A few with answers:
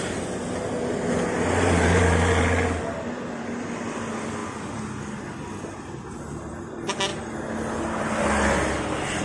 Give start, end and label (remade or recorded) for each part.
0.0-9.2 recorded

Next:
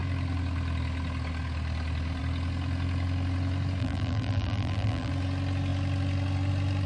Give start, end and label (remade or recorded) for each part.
0.0-3.8 recorded; 3.8-5.1 remade; 5.1-6.9 recorded

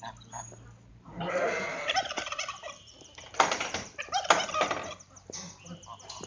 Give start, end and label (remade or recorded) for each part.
0.0-0.9 recorded; 0.9-4.7 remade; 4.7-6.3 recorded

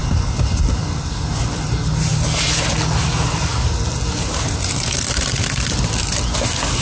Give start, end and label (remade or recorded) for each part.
0.0-0.6 recorded; 0.6-2.1 remade; 2.1-3.0 recorded; 3.0-3.5 remade; 3.5-5.8 recorded; 5.8-6.8 remade

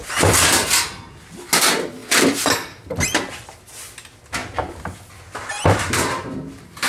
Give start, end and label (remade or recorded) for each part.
0.0-6.9 recorded

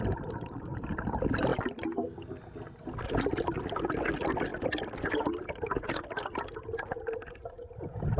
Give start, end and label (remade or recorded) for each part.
0.0-8.2 recorded

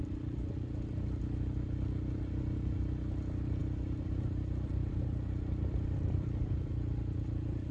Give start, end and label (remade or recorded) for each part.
0.0-3.6 recorded; 3.6-7.7 remade

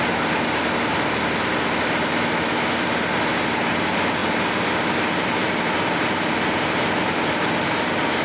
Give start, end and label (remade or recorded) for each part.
0.0-8.2 recorded